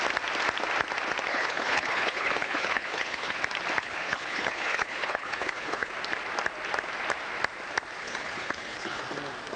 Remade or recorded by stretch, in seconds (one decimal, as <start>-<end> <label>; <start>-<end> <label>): 0.0-1.3 recorded; 1.3-3.4 remade; 3.4-3.8 recorded; 3.8-5.9 remade; 5.9-8.0 recorded; 8.0-9.0 remade; 9.0-9.6 recorded